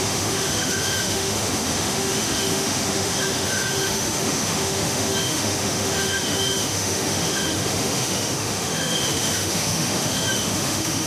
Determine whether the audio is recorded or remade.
remade